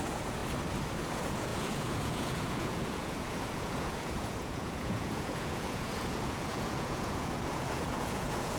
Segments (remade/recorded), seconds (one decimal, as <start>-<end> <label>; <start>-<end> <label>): 0.0-0.4 remade; 0.4-1.0 recorded; 1.0-8.6 remade